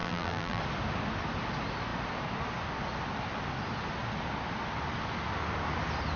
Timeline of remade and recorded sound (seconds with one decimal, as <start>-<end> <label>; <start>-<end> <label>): 0.0-0.6 remade; 0.6-6.2 recorded